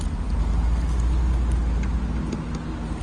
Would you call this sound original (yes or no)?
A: yes